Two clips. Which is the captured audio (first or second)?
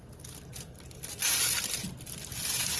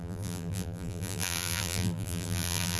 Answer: first